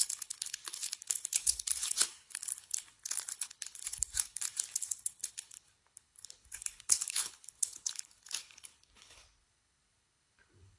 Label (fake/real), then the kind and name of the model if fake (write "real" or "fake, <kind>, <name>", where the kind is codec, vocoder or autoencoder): fake, codec, HILCodec